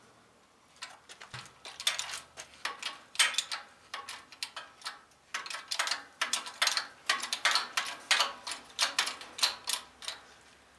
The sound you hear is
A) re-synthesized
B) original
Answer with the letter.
B